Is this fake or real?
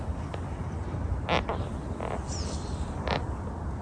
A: real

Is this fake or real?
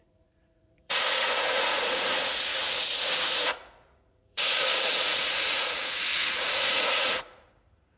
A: fake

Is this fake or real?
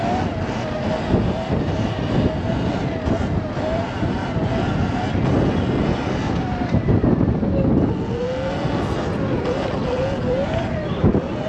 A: real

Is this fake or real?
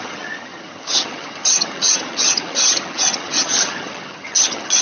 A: fake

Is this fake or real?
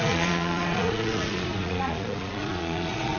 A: fake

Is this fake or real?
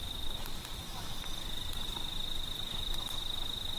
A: real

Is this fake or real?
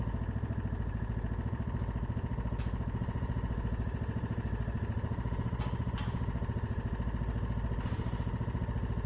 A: real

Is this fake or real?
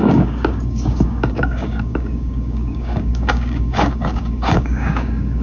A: fake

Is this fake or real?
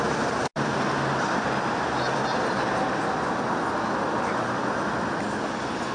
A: real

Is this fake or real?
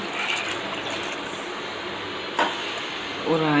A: real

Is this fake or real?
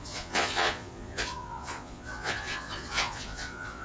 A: fake